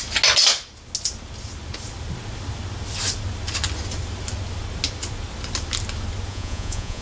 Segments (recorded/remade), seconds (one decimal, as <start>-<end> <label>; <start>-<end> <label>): 0.0-6.3 recorded; 6.3-7.0 remade